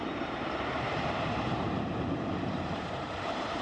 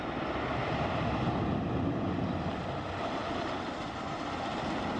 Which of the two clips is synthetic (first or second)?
first